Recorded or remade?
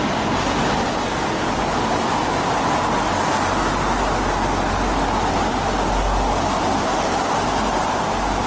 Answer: recorded